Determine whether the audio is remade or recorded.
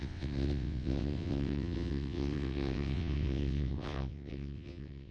remade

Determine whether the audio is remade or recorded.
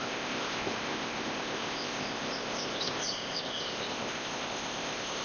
remade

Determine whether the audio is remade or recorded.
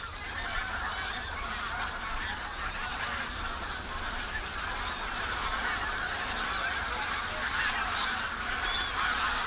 recorded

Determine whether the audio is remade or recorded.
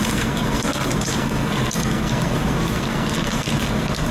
remade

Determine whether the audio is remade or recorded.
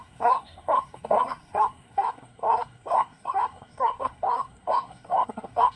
remade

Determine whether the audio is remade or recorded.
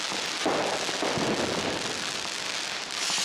recorded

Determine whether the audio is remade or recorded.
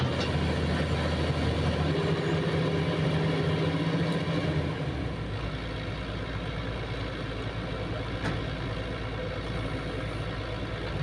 recorded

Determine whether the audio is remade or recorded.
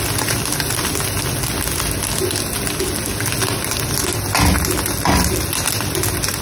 recorded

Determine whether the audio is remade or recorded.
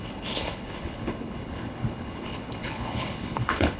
remade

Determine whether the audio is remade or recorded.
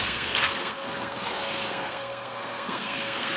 remade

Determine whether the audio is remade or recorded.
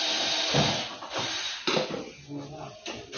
recorded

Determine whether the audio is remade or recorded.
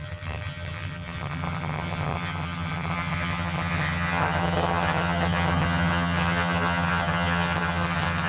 remade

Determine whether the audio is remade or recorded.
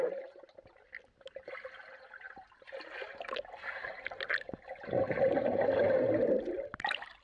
recorded